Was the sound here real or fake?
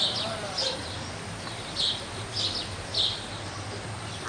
real